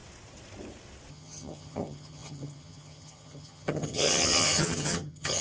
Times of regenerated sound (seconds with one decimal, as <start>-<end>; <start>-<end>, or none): 1.1-5.4